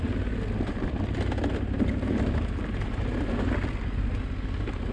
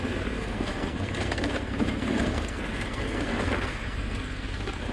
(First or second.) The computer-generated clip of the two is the second